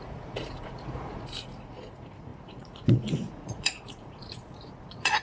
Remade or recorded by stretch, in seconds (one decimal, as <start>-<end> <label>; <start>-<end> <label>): 0.0-5.2 remade